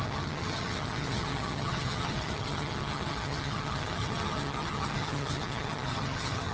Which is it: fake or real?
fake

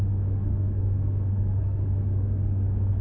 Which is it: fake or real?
fake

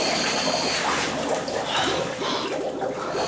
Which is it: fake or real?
real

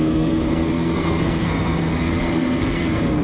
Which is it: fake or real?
fake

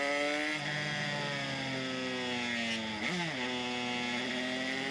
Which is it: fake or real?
real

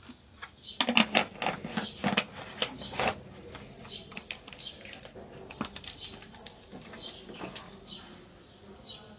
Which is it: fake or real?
real